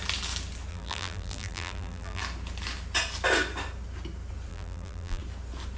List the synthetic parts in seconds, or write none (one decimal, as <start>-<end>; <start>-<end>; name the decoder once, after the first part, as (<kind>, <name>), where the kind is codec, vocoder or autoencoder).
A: 0.7-2.2 (vocoder, BigVGAN v2); 4.5-5.2